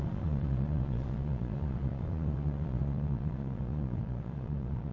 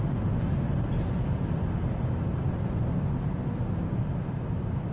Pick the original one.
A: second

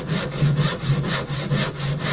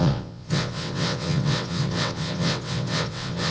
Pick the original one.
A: first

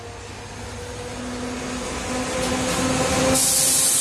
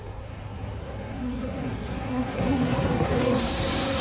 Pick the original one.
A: first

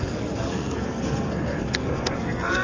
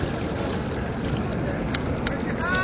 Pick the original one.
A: second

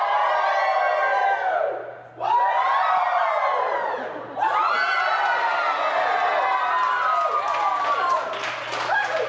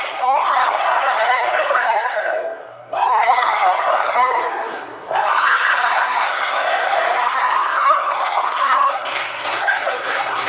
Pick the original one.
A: first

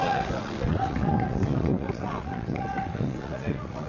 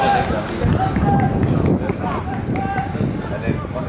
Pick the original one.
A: second